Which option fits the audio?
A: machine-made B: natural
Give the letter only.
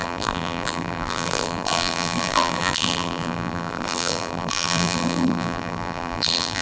A